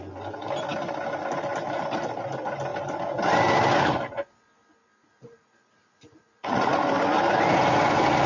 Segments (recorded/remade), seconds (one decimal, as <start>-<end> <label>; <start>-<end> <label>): 0.0-5.0 recorded; 5.0-6.7 remade; 6.7-8.3 recorded

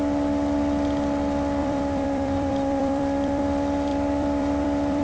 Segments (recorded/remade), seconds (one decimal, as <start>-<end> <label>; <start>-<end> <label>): 0.0-1.6 recorded; 1.6-3.4 remade; 3.4-3.9 recorded; 3.9-5.0 remade

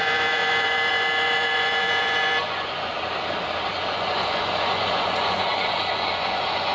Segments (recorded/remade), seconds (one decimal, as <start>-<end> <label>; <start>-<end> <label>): 0.0-2.9 remade; 2.9-3.7 recorded; 3.7-6.7 remade

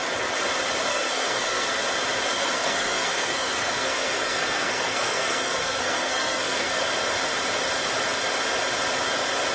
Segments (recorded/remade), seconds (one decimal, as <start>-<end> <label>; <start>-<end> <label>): 0.0-0.9 recorded; 0.9-1.8 remade; 1.8-2.3 recorded; 2.3-6.8 remade; 6.8-9.5 recorded

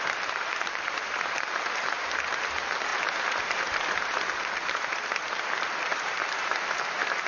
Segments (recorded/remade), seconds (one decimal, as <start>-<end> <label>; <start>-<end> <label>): 0.0-7.3 remade

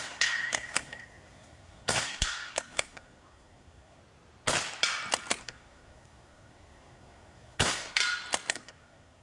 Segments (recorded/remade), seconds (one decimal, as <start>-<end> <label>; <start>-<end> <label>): 0.0-4.0 remade; 4.0-5.4 recorded; 5.4-8.0 remade; 8.0-8.5 recorded; 8.5-9.2 remade

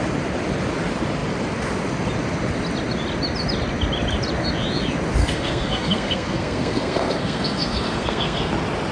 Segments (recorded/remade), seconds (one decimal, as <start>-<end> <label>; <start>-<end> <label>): 0.0-5.2 recorded; 5.2-8.5 remade; 8.5-8.9 recorded

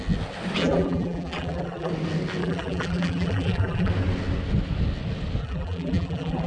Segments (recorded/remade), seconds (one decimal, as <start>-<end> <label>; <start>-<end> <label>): 0.0-0.6 recorded; 0.6-1.9 remade; 1.9-2.4 recorded; 2.4-3.9 remade; 3.9-5.4 recorded; 5.4-6.5 remade